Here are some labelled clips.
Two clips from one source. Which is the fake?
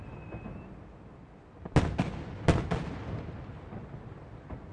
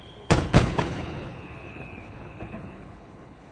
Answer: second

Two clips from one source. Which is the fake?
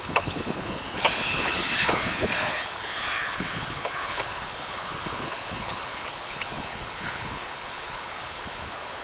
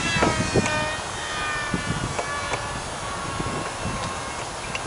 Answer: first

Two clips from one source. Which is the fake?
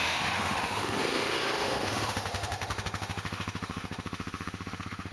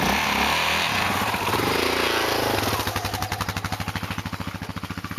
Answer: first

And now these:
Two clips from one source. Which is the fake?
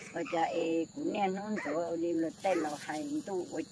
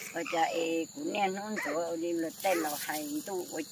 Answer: first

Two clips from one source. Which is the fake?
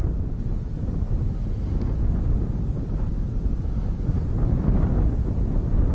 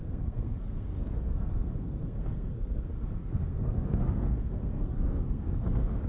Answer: second